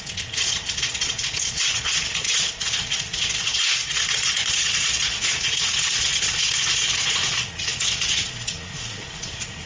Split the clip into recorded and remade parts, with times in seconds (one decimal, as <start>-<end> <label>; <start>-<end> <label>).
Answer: 0.0-9.7 remade